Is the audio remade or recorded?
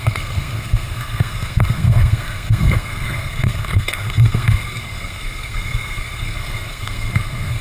remade